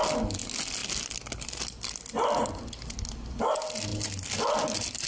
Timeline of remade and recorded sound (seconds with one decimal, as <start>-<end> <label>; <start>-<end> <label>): 0.0-5.1 recorded